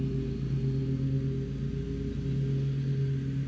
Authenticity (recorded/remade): recorded